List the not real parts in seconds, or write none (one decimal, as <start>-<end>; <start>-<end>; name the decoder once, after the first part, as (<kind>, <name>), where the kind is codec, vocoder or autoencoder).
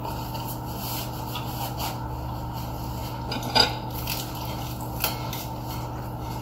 none